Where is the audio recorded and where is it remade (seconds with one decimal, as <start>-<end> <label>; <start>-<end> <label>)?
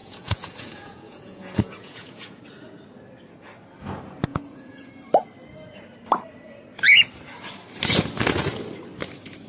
0.0-2.4 remade; 2.4-4.3 recorded; 4.3-4.9 remade; 4.9-9.5 recorded